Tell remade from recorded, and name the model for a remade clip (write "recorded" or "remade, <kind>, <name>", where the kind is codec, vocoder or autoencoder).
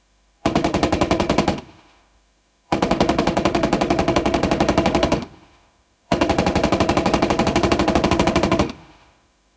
remade, autoencoder, DAC-VAE